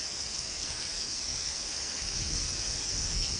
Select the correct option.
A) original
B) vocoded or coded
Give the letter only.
B